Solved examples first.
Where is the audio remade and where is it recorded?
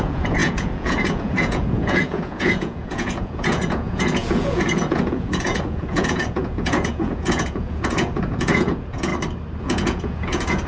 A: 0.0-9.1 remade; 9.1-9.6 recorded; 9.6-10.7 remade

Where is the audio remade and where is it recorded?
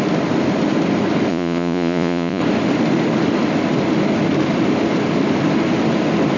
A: 0.0-1.3 recorded; 1.3-2.4 remade; 2.4-6.4 recorded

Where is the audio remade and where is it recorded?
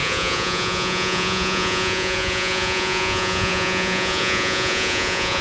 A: 0.0-5.4 remade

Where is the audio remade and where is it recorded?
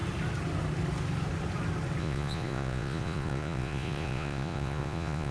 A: 0.0-2.0 recorded; 2.0-5.3 remade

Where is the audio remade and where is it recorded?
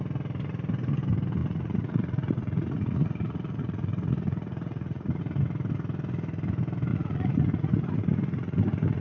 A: 0.0-1.4 recorded; 1.4-5.2 remade; 5.2-6.9 recorded; 6.9-9.0 remade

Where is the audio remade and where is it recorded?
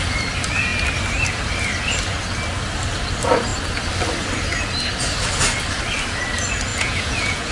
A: 0.0-6.7 recorded; 6.7-7.5 remade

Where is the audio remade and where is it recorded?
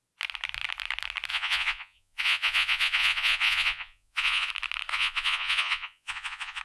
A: 0.0-1.3 recorded; 1.3-4.5 remade; 4.5-4.9 recorded; 4.9-6.6 remade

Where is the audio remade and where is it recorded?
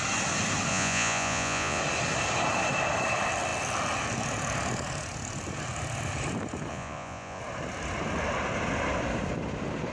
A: 0.0-0.7 recorded; 0.7-1.8 remade; 1.8-6.7 recorded; 6.7-7.4 remade; 7.4-9.9 recorded